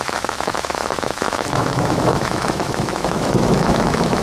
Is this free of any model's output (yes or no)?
no